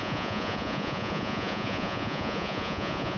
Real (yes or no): no